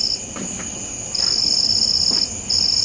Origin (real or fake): real